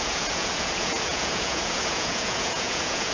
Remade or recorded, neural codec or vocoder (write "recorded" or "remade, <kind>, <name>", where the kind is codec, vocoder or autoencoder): remade, vocoder, Vocos